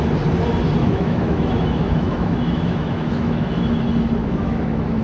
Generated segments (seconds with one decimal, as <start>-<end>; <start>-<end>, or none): 0.8-3.8; 4.2-5.0